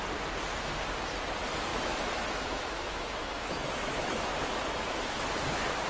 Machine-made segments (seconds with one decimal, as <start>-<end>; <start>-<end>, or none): 1.7-5.2